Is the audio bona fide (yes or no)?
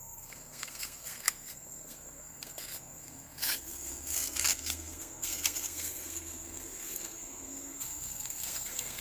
no